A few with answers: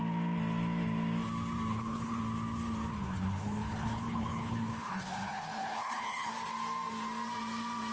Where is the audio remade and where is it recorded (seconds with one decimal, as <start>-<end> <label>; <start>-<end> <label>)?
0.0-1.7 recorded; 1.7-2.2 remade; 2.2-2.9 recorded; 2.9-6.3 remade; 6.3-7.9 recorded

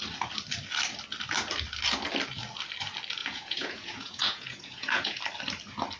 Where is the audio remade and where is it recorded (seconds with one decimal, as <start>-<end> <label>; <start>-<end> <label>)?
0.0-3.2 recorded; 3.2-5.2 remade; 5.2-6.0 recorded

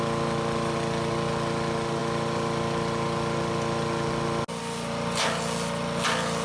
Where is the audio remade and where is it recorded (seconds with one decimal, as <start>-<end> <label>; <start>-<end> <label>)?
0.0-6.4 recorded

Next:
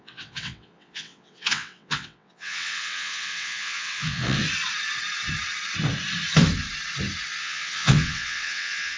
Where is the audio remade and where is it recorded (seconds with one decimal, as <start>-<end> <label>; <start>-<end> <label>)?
0.0-4.4 remade; 4.4-7.4 recorded; 7.4-9.0 remade

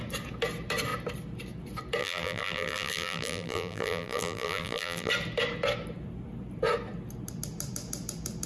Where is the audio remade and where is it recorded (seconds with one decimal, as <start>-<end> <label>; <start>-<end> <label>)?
0.0-2.0 recorded; 2.0-5.1 remade; 5.1-8.5 recorded